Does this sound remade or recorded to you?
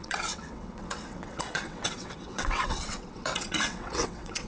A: remade